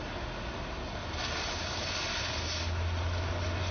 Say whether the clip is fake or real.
real